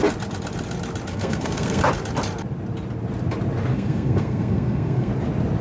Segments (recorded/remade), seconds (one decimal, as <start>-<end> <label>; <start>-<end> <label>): 0.0-1.1 recorded; 1.1-1.8 remade; 1.8-3.7 recorded; 3.7-5.1 remade; 5.1-5.6 recorded